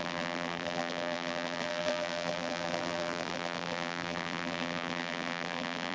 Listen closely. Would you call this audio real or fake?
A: fake